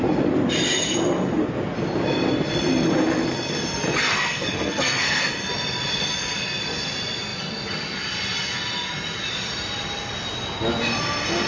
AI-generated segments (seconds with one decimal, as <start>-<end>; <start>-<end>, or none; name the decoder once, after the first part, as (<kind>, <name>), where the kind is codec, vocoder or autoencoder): 4.0-5.2 (codec, SNAC)